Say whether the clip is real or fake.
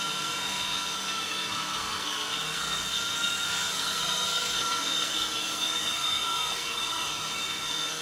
fake